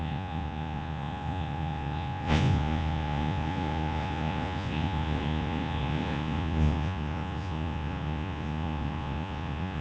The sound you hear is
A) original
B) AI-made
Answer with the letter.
B